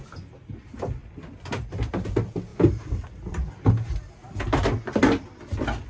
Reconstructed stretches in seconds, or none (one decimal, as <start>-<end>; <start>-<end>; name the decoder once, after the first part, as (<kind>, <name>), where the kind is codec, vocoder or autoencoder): none